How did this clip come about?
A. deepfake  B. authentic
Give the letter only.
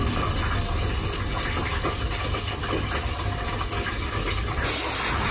B